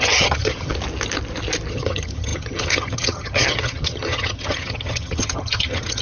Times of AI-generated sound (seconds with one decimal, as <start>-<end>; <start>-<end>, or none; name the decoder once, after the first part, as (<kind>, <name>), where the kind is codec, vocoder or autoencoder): 0.0-0.7 (vocoder, HiFi-GAN); 1.7-6.0